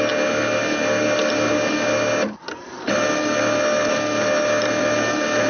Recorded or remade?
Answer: recorded